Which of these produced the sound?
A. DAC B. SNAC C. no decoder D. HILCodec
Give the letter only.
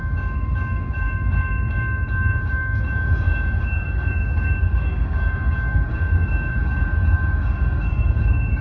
A